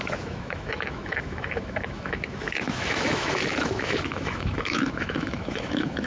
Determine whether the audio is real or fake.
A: fake